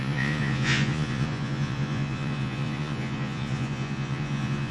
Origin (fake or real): fake